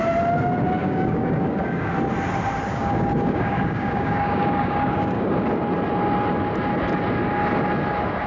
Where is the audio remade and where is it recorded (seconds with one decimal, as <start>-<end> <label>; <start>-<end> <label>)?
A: 0.0-0.8 recorded; 0.8-1.9 remade; 1.9-2.7 recorded; 2.7-5.3 remade; 5.3-8.3 recorded